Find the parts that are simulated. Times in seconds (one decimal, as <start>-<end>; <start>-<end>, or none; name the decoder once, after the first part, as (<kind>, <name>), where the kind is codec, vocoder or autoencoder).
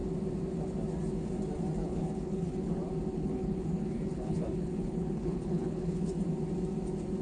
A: 1.8-2.7 (codec, HILCodec); 3.1-6.1